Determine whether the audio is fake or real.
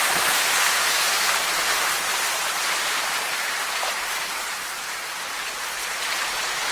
fake